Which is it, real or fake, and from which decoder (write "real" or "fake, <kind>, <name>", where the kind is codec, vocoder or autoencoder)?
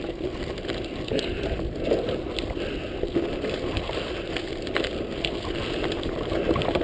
real